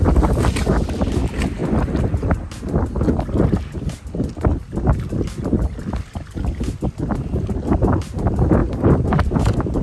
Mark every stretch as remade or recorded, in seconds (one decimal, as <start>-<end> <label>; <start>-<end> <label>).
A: 0.0-8.6 recorded; 8.6-9.4 remade; 9.4-9.8 recorded